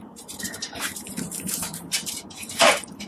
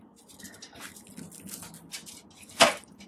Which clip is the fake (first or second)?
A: first